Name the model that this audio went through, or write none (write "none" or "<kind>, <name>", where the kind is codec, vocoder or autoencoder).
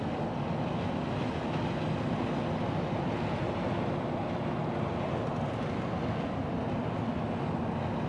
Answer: none